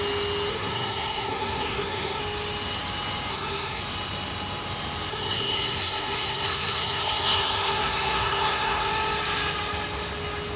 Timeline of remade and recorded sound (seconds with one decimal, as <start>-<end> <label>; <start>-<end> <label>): 0.0-0.5 recorded; 0.5-2.2 remade; 2.2-3.3 recorded; 3.3-3.8 remade; 3.8-5.1 recorded; 5.1-8.9 remade; 8.9-10.6 recorded